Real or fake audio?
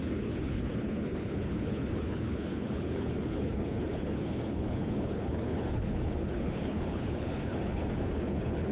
fake